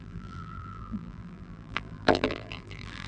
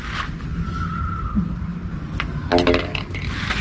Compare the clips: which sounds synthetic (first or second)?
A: first